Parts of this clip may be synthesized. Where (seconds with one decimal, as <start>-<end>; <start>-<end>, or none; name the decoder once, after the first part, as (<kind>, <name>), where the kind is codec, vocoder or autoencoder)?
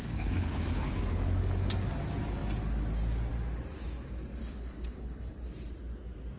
0.0-0.6 (codec, HILCodec); 4.4-5.3